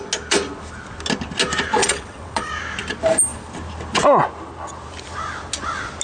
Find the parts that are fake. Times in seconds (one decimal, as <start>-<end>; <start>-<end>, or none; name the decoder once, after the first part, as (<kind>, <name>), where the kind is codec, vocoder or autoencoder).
1.8-2.5 (vocoder, WaveNeXt)